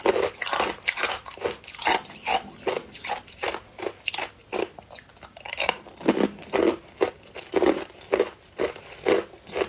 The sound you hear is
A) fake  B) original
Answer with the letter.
B